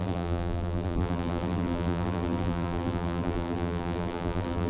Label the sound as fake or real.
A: fake